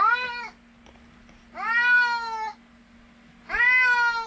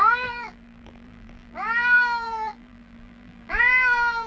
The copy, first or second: second